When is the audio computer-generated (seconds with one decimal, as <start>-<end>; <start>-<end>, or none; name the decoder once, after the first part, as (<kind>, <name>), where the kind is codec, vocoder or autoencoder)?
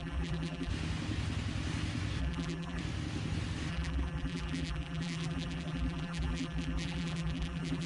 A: 0.0-0.7 (vocoder, BigVGAN v2); 2.2-2.8; 3.7-7.9